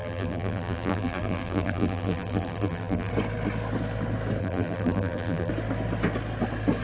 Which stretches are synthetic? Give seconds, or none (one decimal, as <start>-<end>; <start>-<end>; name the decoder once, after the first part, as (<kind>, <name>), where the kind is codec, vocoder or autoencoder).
0.0-3.1 (vocoder, BigVGAN v2); 4.4-5.5